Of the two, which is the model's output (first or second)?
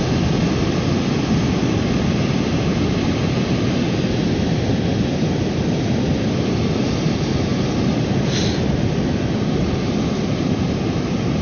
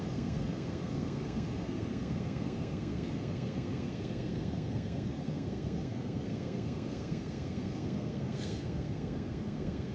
second